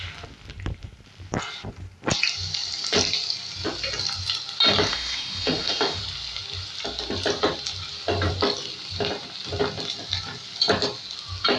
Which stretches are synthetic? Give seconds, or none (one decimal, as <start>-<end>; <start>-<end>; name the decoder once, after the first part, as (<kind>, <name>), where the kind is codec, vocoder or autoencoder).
4.9-6.0 (autoencoder, DAC-VAE)